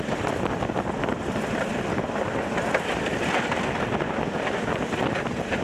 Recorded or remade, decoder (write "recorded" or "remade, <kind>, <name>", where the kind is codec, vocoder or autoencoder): recorded